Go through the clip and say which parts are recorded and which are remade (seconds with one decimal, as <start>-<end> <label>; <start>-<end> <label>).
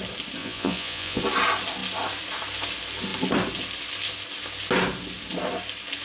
0.0-0.4 recorded; 0.4-1.2 remade; 1.2-6.0 recorded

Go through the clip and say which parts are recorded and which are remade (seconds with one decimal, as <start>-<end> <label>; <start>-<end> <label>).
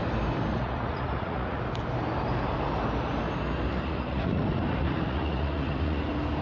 0.0-0.5 recorded; 0.5-1.6 remade; 1.6-3.7 recorded; 3.7-6.0 remade; 6.0-6.4 recorded